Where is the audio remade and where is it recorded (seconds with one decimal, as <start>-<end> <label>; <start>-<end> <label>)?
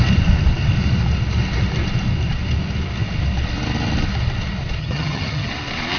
0.0-4.8 recorded; 4.8-5.5 remade; 5.5-6.0 recorded